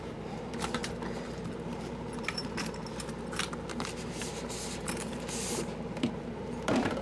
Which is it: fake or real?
fake